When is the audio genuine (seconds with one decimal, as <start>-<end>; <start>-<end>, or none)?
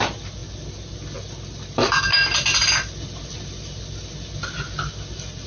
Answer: 0.0-5.5